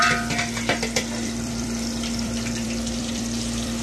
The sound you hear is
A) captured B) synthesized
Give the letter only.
B